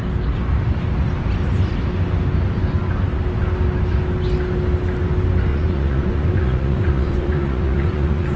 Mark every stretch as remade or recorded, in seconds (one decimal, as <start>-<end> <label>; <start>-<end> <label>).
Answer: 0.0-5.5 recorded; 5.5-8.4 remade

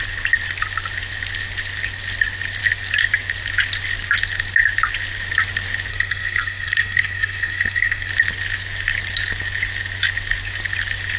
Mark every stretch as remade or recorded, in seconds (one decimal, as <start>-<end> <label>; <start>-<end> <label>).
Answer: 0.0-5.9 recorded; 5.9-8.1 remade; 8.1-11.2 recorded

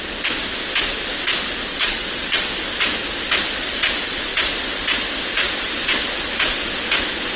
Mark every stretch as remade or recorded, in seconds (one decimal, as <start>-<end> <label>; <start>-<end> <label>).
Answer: 0.0-1.7 recorded; 1.7-2.4 remade; 2.4-7.4 recorded

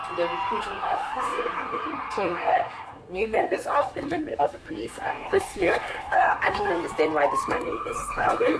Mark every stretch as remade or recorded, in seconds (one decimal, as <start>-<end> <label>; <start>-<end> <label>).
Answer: 0.0-0.6 recorded; 0.6-6.7 remade; 6.7-7.4 recorded; 7.4-8.6 remade

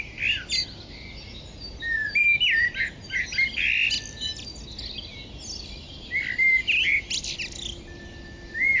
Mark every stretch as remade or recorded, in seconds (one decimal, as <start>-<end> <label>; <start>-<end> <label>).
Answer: 0.0-8.8 recorded